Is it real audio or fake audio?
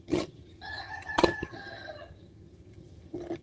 fake